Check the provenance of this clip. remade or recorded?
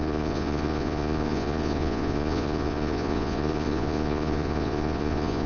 remade